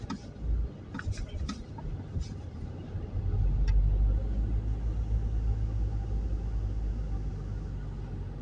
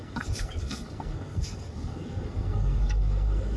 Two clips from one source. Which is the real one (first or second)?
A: first